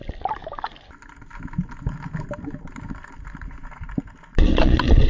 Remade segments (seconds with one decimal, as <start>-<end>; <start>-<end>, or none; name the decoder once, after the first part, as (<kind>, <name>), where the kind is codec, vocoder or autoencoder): 4.3-5.1 (vocoder, Vocos)